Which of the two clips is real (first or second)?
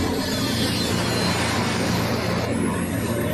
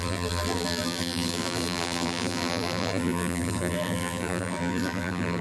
first